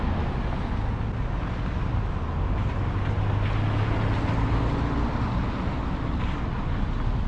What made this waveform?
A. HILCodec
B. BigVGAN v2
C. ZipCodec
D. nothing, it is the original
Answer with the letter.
D